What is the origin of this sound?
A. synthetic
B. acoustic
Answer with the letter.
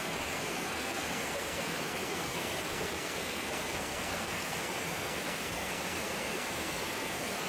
A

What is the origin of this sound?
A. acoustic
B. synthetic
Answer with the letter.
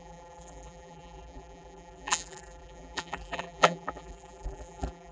B